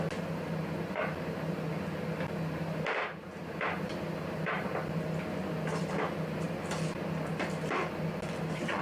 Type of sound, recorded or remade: recorded